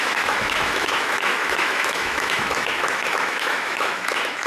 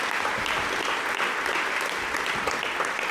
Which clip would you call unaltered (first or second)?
second